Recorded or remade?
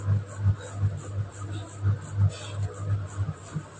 recorded